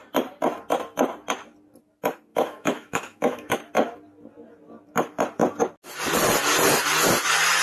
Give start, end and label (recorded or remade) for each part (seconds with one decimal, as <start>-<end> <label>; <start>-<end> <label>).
0.0-2.3 recorded; 2.3-3.6 remade; 3.6-7.6 recorded